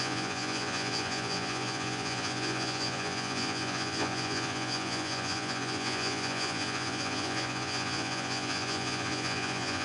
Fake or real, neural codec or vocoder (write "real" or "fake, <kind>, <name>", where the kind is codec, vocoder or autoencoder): fake, vocoder, Vocos